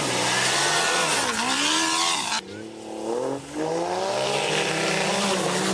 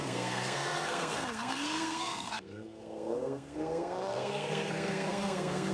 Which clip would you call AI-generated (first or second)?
second